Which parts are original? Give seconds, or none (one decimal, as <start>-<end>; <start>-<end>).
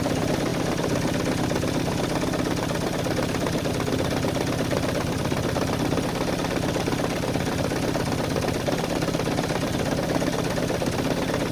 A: 0.0-11.5